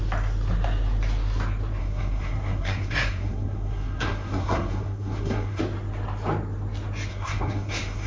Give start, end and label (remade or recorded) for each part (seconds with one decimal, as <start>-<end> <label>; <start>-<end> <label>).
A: 0.0-1.8 recorded; 1.8-5.6 remade; 5.6-7.1 recorded; 7.1-8.1 remade